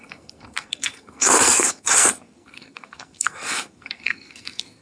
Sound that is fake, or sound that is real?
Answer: fake